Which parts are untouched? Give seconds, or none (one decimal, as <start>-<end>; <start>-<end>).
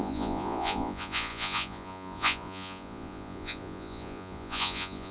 none